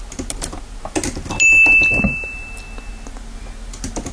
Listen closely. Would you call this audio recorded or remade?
recorded